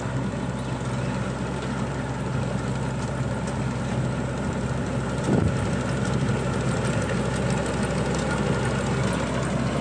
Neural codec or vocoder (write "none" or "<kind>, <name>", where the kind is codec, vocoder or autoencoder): none